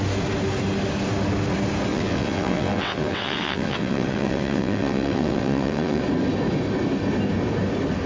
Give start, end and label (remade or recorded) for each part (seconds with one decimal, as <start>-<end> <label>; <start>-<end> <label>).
0.0-1.9 recorded; 1.9-6.0 remade; 6.0-8.1 recorded